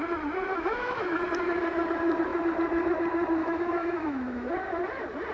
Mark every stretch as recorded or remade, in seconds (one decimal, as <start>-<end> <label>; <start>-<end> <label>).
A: 0.0-0.5 recorded; 0.5-1.2 remade; 1.2-3.4 recorded; 3.4-4.5 remade; 4.5-5.3 recorded